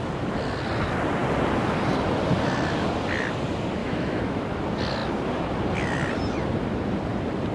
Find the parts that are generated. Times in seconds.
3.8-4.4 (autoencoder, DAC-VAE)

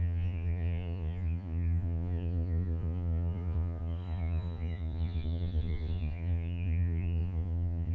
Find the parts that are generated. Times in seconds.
0.0-7.9 (vocoder, Vocos)